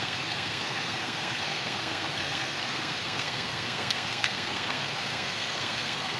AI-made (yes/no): yes